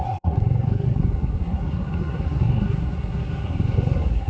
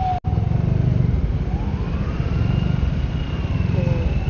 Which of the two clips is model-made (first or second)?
first